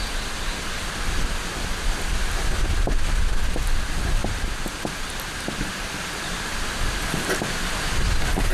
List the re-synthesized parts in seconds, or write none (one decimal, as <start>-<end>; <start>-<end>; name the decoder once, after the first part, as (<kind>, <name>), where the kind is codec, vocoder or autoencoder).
none